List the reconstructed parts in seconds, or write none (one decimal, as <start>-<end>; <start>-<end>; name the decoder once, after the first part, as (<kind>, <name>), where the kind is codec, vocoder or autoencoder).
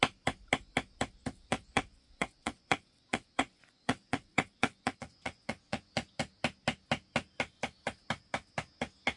1.4-6.2 (vocoder, Vocos)